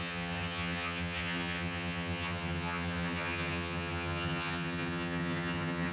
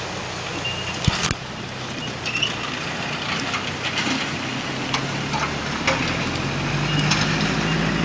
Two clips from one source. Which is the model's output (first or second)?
first